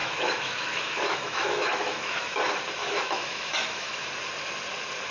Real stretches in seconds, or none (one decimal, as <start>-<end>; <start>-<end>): 2.4-2.8; 4.1-5.1